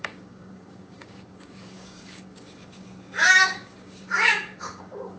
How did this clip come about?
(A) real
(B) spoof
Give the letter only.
B